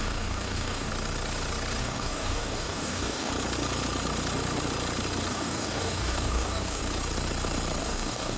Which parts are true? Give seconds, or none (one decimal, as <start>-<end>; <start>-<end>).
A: 0.9-1.8; 3.3-5.3; 6.8-7.8